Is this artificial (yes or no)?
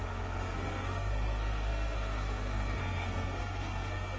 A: yes